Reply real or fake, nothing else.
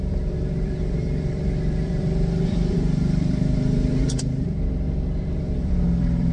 fake